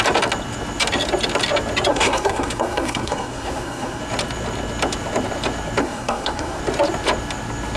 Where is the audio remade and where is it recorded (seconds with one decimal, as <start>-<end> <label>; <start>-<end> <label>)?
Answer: 0.0-1.9 recorded; 1.9-4.0 remade; 4.0-5.8 recorded; 5.8-6.6 remade; 6.6-7.8 recorded